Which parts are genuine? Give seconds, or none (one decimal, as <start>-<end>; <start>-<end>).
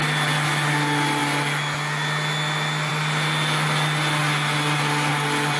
0.0-5.6